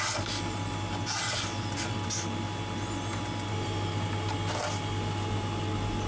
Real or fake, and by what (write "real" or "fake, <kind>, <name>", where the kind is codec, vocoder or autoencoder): real